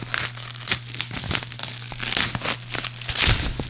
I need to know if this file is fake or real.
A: real